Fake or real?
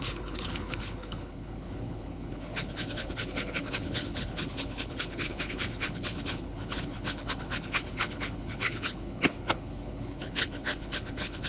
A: fake